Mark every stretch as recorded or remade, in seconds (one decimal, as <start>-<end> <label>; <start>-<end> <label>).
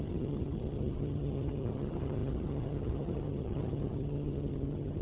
0.0-5.0 remade